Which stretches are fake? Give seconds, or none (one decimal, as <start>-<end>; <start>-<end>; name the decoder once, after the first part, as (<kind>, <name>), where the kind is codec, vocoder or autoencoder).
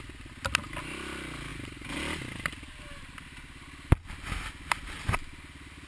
none